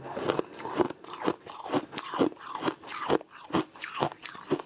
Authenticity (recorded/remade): recorded